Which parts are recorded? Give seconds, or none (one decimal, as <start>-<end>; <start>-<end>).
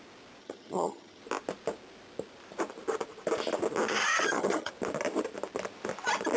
0.0-0.4; 1.2-4.0; 4.7-6.4